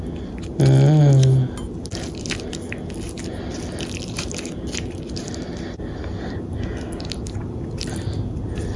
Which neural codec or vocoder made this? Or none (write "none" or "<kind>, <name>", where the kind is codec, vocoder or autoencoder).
none